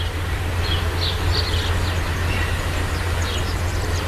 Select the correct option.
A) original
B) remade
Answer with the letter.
A